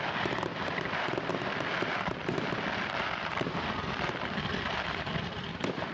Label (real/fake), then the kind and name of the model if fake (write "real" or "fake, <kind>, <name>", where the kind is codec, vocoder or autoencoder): fake, vocoder, BigVGAN v2